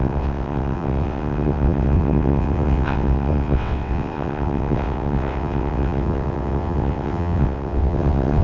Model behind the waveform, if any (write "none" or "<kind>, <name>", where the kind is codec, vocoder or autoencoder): vocoder, WaveNeXt